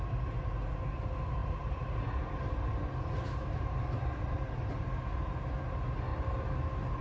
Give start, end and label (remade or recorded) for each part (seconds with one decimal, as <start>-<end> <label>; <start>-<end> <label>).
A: 0.0-1.4 recorded; 1.4-2.8 remade; 2.8-3.4 recorded; 3.4-4.9 remade; 4.9-6.1 recorded; 6.1-6.6 remade; 6.6-7.0 recorded

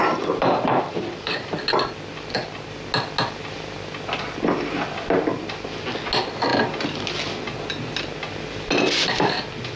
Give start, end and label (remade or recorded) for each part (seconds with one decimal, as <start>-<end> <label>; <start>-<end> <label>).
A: 0.0-1.6 remade; 1.6-9.8 recorded

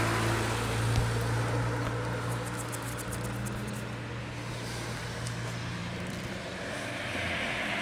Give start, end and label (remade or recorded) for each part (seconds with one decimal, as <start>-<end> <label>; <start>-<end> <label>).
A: 0.0-5.8 recorded; 5.8-6.8 remade; 6.8-7.8 recorded

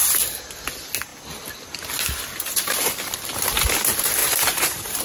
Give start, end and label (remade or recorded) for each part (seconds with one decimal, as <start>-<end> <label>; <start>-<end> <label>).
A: 0.0-4.2 recorded; 4.2-5.0 remade